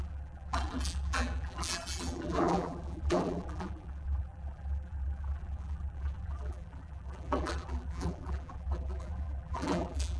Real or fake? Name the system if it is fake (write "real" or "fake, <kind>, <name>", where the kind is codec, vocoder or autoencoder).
fake, vocoder, BigVGAN v2